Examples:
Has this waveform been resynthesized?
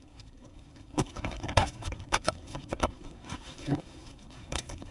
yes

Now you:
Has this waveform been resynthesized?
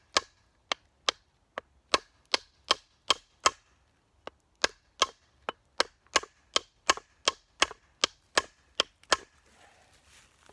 no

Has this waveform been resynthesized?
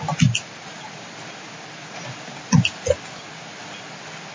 no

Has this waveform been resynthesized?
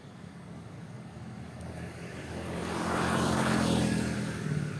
yes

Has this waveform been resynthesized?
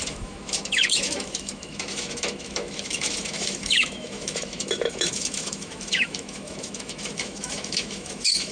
yes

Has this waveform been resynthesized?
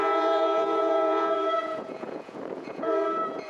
yes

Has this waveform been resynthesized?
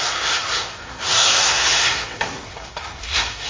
yes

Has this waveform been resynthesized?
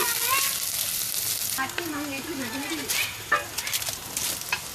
no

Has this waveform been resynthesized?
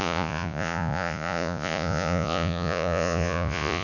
yes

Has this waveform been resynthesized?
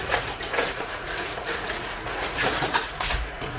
yes